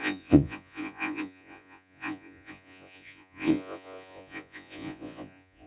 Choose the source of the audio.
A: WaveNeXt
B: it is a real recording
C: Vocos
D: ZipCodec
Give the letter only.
C